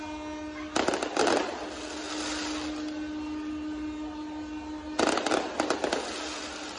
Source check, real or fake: real